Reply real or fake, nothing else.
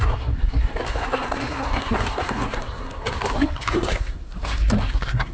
fake